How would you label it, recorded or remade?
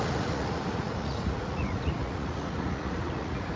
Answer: remade